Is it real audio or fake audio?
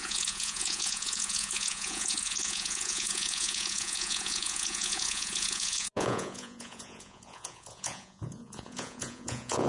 fake